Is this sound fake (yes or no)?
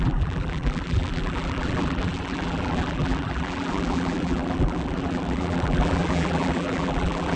yes